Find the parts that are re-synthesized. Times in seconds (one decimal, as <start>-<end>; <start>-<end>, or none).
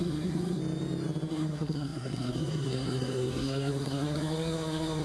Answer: 0.0-0.6; 1.3-5.0